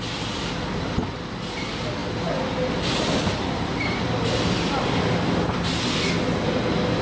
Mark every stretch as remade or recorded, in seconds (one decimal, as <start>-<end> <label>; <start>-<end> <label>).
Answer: 0.0-7.0 recorded